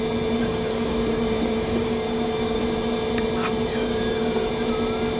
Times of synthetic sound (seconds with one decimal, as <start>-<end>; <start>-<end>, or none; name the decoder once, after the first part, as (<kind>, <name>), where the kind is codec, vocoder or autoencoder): 0.4-2.6 (codec, DAC); 3.7-4.5